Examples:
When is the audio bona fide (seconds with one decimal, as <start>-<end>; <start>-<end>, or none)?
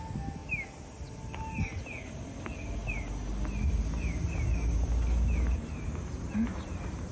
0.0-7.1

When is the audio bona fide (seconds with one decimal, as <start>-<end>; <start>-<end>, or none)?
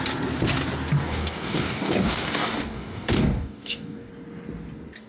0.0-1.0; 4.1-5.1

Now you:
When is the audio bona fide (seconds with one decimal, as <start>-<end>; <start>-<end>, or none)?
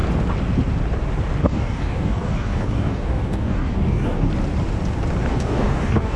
0.0-1.4; 4.3-5.3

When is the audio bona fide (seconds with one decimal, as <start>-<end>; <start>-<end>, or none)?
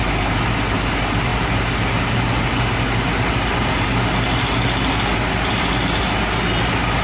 0.0-7.0